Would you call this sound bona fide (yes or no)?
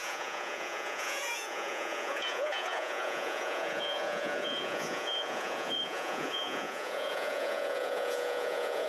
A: no